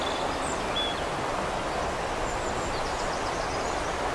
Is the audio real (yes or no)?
yes